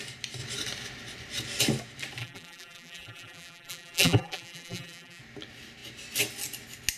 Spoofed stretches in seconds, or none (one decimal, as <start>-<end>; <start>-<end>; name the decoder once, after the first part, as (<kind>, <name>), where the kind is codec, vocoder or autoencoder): 2.2-5.2 (vocoder, BigVGAN v2)

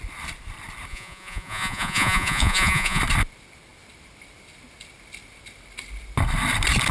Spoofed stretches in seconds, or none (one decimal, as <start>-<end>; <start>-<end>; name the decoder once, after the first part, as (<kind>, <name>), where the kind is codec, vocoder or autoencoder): 0.9-3.0 (vocoder, Vocos)

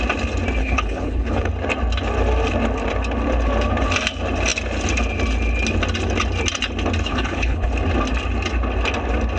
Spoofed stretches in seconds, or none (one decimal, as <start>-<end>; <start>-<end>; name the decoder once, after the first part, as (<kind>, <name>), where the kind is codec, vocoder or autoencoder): 0.6-1.5 (codec, HILCodec); 7.1-7.7

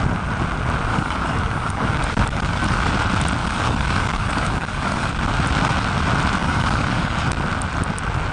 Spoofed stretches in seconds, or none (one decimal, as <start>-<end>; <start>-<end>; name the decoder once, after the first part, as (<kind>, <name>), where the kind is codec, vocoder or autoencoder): 0.9-2.9 (codec, DAC); 3.4-5.1; 6.4-7.3

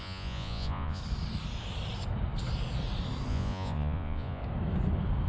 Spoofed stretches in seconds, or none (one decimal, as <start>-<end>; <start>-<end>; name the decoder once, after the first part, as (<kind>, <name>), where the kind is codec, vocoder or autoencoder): 0.0-1.0 (vocoder, Vocos); 3.3-4.4

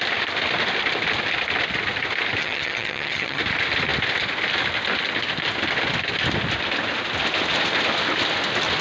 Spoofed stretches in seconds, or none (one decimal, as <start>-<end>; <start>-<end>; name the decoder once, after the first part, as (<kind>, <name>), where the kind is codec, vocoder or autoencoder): 2.4-3.4 (vocoder, HiFi-GAN)